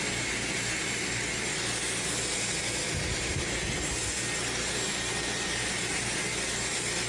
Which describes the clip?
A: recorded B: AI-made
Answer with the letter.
A